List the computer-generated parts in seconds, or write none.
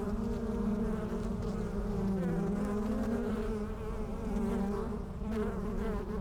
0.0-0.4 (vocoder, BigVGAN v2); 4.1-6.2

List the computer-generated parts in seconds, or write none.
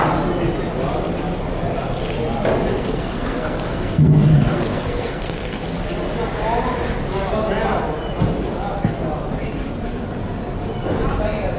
2.7-5.6 (codec, SNAC)